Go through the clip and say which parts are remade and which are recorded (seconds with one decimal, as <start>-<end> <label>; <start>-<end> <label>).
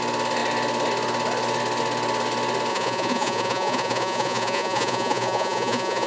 0.0-2.7 recorded; 2.7-6.1 remade